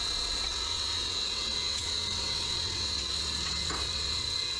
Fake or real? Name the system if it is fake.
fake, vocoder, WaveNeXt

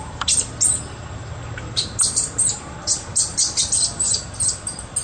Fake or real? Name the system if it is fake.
real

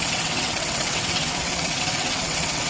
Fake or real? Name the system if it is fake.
fake, vocoder, WaveNeXt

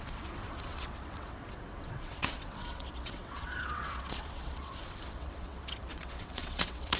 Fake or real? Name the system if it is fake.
fake, vocoder, WaveNeXt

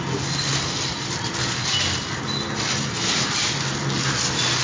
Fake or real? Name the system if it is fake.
real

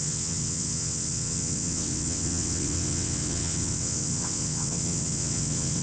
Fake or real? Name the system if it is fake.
fake, vocoder, WaveNeXt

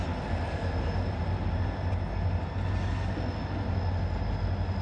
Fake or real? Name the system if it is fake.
real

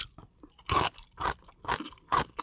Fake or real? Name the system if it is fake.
real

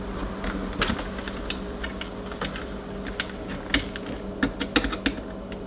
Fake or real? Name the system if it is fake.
real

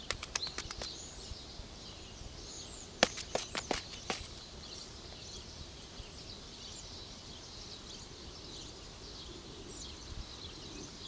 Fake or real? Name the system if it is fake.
real